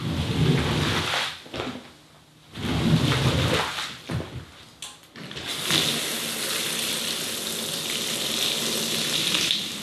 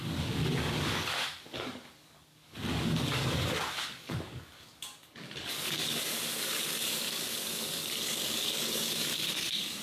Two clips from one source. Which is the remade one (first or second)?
second